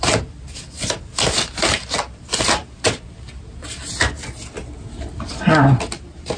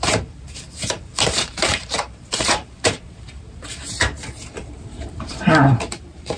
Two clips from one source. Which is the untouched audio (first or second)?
first